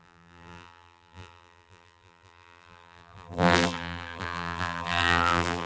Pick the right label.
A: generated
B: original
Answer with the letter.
A